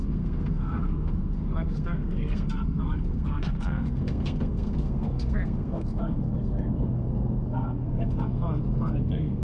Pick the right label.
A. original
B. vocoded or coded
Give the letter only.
B